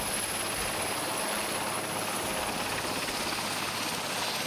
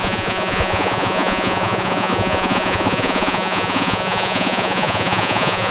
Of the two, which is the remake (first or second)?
second